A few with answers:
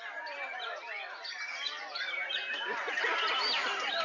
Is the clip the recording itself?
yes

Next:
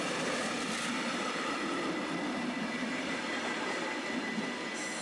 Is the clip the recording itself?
no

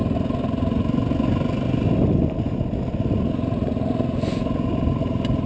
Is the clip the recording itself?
yes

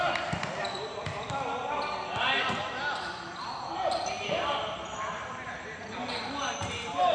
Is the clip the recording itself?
no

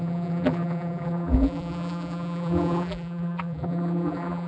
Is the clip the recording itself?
no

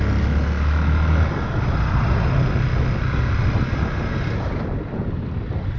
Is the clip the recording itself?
yes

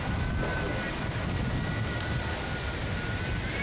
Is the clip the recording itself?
yes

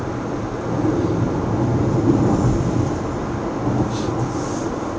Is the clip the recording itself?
yes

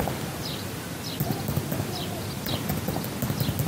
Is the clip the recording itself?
yes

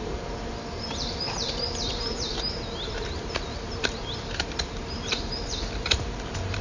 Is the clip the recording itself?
no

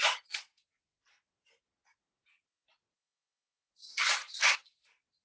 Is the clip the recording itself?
yes